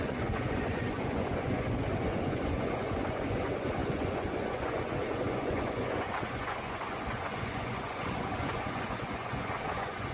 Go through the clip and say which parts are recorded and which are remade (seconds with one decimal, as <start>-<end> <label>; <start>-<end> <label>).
0.0-10.1 remade

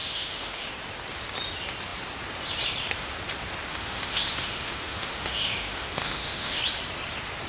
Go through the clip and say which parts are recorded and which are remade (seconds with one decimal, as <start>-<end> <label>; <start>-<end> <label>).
0.0-0.7 remade; 0.7-3.7 recorded; 3.7-6.6 remade; 6.6-7.5 recorded